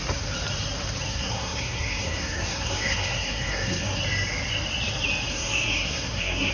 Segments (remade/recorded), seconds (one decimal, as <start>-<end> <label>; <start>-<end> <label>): 0.0-1.1 recorded; 1.1-4.0 remade; 4.0-5.3 recorded; 5.3-6.5 remade